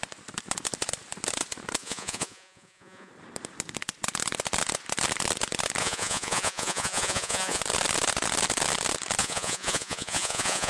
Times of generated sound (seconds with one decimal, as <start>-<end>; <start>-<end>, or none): 1.8-3.1; 5.8-7.6; 9.2-10.7